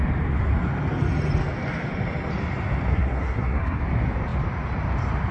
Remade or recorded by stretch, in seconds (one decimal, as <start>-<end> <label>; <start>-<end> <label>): 0.0-2.9 recorded; 2.9-3.8 remade; 3.8-5.3 recorded